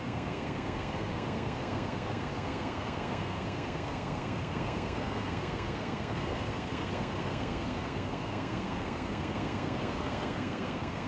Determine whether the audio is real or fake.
fake